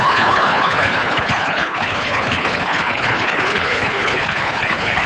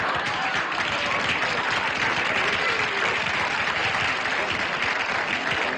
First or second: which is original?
second